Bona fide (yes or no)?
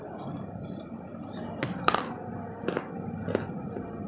yes